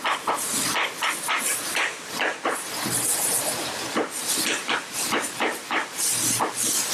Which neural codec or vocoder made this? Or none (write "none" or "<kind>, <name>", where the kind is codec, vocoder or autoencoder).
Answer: vocoder, BigVGAN v2